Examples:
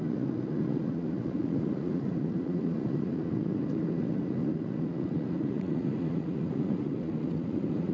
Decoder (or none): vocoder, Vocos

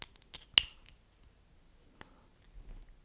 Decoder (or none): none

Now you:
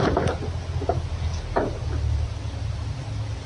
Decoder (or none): none